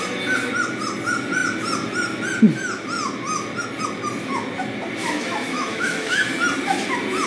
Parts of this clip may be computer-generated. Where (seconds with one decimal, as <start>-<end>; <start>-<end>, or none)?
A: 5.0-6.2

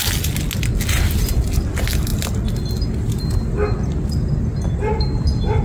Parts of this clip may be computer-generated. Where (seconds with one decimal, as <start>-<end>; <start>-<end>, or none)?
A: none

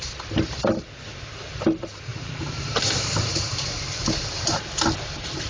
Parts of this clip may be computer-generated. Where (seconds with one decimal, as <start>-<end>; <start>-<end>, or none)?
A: 2.1-4.0

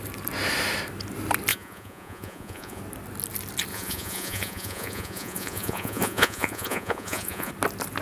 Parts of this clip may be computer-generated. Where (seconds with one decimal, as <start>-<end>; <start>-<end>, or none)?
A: 1.5-2.8; 3.7-7.5

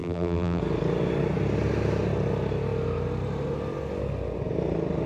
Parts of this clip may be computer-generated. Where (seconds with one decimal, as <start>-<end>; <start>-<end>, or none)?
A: 0.0-0.6

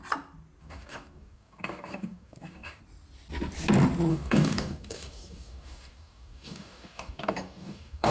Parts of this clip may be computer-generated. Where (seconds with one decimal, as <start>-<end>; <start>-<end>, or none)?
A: 0.6-2.8; 4.1-8.1